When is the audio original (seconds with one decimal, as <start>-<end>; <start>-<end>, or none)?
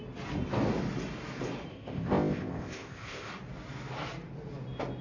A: 0.0-1.7; 3.3-5.0